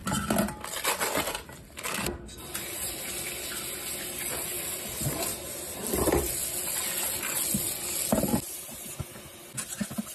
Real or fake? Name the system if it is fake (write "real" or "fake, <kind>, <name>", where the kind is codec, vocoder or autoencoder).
real